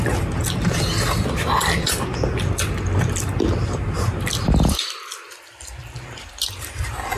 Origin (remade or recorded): remade